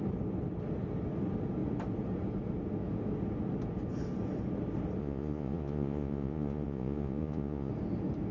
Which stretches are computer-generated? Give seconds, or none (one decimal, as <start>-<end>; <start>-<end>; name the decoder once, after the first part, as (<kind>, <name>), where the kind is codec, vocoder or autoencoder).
5.0-7.7 (vocoder, Vocos)